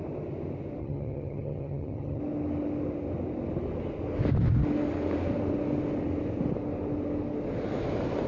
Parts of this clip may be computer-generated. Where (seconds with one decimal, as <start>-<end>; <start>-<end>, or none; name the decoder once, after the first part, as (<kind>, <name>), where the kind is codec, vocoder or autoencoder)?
0.8-2.2 (vocoder, HiFi-GAN)